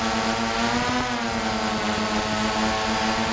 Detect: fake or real real